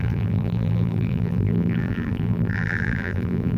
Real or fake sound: fake